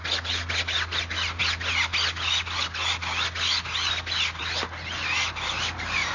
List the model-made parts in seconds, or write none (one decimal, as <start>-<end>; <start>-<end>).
none